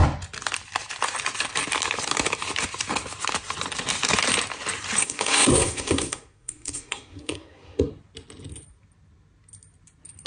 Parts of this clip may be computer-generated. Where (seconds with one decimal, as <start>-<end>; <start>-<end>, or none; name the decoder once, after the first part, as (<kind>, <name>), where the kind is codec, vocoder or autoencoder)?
5.0-7.9 (codec, SNAC)